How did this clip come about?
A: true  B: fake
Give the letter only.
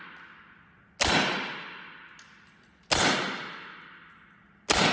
A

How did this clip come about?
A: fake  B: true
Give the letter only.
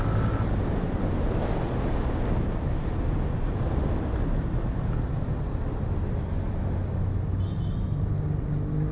B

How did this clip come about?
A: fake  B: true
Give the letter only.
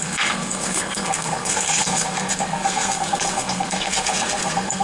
A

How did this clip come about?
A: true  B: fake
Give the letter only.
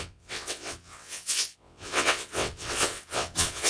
B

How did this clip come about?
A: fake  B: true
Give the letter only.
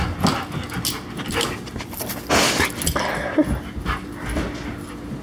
B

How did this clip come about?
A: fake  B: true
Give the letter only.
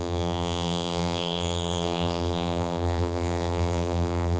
A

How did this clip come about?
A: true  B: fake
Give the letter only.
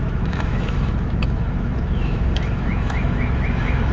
B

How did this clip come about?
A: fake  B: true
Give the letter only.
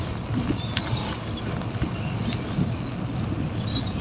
B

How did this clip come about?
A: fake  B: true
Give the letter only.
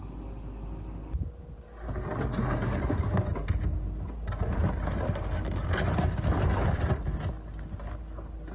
B